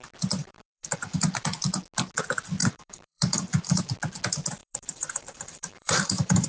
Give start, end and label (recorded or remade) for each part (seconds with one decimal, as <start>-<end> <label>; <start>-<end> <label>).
0.0-0.4 recorded; 0.4-1.2 remade; 1.2-2.6 recorded; 2.6-3.8 remade; 3.8-4.6 recorded; 4.6-6.5 remade